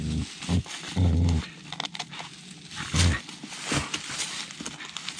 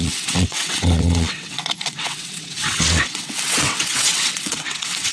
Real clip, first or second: first